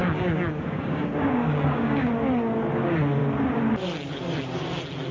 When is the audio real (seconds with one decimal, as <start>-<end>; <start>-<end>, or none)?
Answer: 2.1-5.1